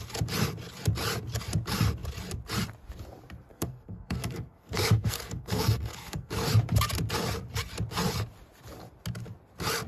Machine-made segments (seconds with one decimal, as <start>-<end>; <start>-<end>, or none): 3.5-6.3